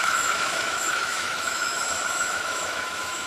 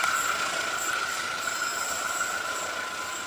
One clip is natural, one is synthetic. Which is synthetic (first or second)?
first